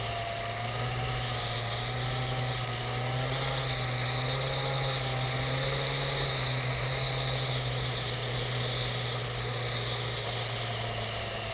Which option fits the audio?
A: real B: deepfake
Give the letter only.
A